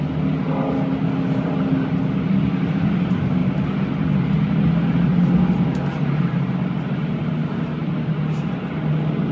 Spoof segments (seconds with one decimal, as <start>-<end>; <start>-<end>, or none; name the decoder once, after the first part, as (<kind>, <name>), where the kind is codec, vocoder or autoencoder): 5.7-6.5 (vocoder, BigVGAN v2); 7.2-7.9